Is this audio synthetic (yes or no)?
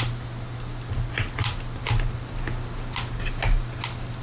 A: no